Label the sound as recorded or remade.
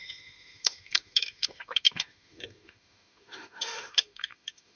remade